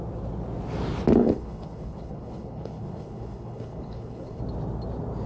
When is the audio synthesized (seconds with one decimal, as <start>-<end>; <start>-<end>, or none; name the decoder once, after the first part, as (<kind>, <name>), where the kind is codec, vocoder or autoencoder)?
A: 1.2-4.4 (codec, HILCodec)